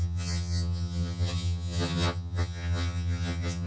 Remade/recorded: remade